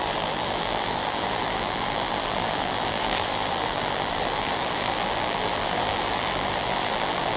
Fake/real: fake